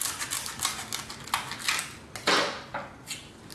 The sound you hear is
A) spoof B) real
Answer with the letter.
B